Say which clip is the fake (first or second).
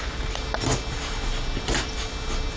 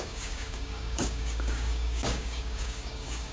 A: second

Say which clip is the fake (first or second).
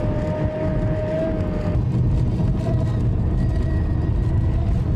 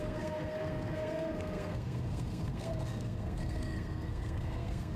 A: second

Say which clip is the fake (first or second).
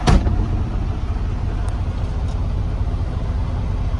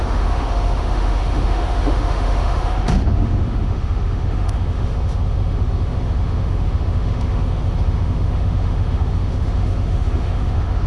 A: second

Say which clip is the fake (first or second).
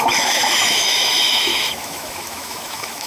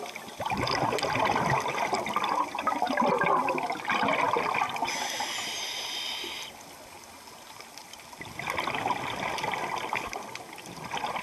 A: first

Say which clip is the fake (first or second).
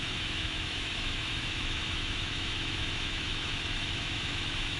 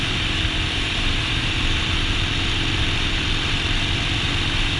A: first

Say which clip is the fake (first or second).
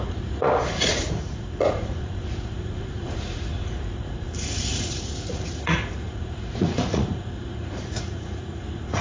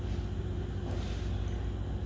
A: first